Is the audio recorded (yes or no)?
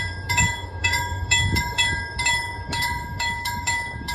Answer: no